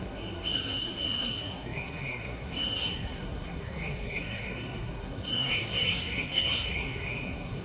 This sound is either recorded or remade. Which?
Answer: remade